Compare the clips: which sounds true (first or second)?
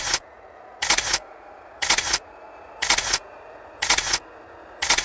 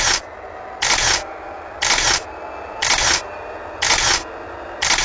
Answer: second